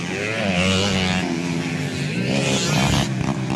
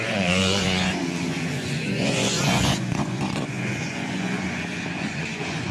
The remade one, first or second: second